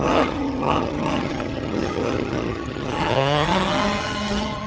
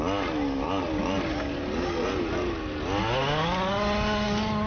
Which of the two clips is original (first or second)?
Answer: second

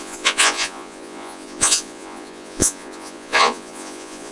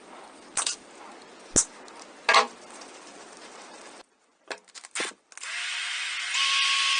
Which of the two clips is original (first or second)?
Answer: second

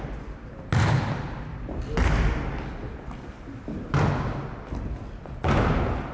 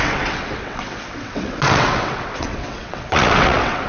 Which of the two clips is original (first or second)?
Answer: first